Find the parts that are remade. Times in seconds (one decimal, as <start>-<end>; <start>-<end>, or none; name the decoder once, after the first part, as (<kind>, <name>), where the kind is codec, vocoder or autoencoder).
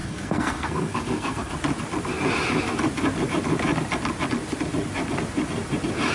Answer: 0.0-1.5 (codec, SNAC)